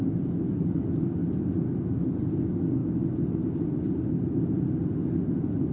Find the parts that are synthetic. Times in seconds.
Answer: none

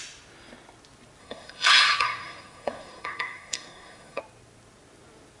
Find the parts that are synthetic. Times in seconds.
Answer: 1.2-4.2 (codec, SNAC)

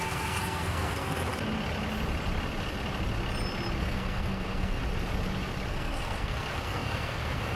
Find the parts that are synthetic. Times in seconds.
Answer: 0.0-1.3 (codec, SNAC); 3.8-4.8; 5.7-7.6

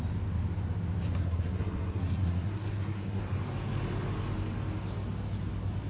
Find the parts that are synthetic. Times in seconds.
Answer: 1.2-3.2 (codec, SNAC)